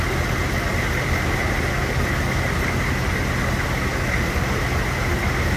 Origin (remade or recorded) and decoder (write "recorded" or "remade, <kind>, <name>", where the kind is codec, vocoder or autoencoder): recorded